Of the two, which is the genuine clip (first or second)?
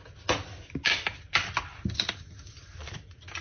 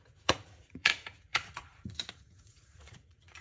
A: first